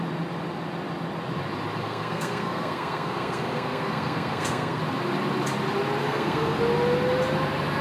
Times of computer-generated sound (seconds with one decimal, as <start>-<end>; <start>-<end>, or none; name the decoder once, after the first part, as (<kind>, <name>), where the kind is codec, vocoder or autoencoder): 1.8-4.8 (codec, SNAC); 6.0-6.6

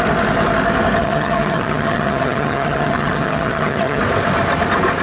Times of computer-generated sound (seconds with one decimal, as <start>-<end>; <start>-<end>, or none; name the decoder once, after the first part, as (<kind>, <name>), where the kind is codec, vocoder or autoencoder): 1.0-4.0 (vocoder, HiFi-GAN)

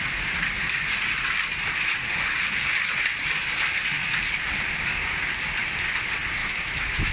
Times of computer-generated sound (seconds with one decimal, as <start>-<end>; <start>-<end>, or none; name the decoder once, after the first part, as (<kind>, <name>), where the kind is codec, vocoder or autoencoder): 6.4-7.1 (autoencoder, DAC-VAE)

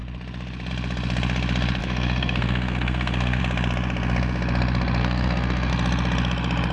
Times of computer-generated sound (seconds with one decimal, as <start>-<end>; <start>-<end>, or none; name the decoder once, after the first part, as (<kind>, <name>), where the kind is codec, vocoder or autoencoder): 1.8-3.4 (codec, SNAC); 5.0-5.7

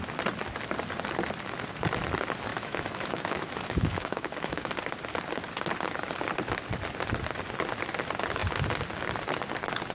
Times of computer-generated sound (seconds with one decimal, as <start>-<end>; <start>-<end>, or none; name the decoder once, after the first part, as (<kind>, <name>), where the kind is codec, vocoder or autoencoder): 2.5-4.7 (autoencoder, DAC-VAE)

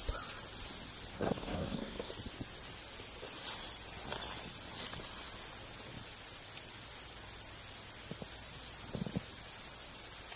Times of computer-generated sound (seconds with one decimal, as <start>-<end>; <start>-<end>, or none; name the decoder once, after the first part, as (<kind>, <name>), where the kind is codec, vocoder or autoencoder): 1.1-2.1 (codec, SNAC)

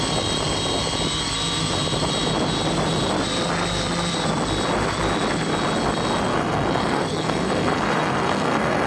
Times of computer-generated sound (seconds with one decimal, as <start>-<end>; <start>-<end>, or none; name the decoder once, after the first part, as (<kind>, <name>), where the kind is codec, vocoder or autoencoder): 6.3-8.9 (codec, SNAC)

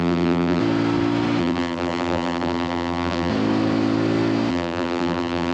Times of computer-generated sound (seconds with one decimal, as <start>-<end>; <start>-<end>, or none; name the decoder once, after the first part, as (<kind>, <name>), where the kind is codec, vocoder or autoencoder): 0.0-0.6 (vocoder, BigVGAN v2); 1.4-3.3; 4.5-5.5